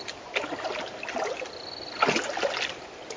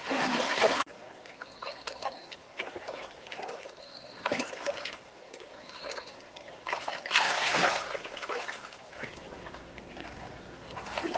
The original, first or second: first